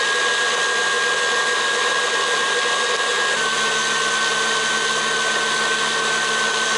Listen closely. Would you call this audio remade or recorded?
recorded